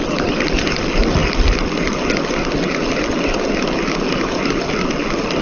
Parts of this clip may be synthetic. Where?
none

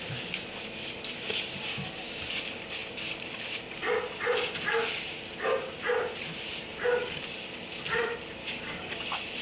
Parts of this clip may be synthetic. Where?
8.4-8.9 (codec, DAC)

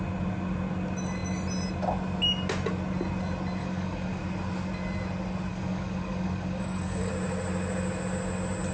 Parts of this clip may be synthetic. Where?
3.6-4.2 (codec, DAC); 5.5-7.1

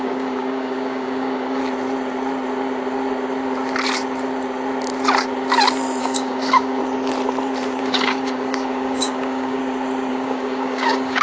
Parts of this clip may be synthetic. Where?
0.0-1.6 (codec, DAC); 6.0-6.8; 7.8-9.6; 10.1-11.2

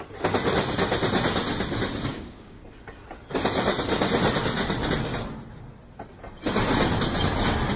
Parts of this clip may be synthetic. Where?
2.1-2.6 (codec, DAC)

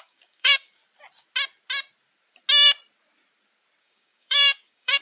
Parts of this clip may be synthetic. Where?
0.0-0.8 (codec, DAC); 3.8-5.0

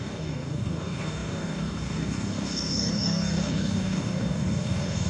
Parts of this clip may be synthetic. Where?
0.0-5.1 (codec, DAC)